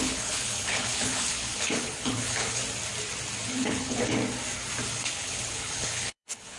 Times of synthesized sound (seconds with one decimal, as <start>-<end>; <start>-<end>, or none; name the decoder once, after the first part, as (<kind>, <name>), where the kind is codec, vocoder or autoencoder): 0.0-2.6 (codec, HILCodec); 3.5-4.2; 4.9-6.6